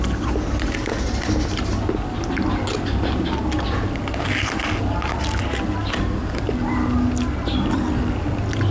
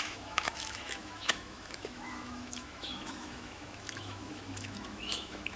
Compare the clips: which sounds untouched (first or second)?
first